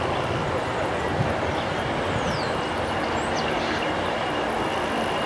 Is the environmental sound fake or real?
real